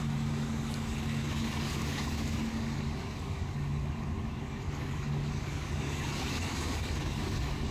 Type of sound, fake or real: fake